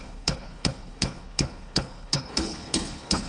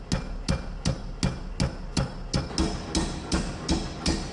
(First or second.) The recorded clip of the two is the second